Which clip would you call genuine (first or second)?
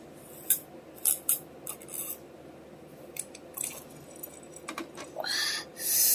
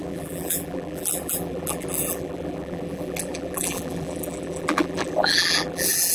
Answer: first